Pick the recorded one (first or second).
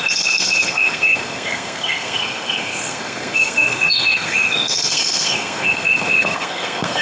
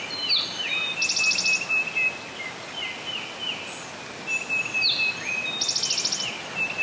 second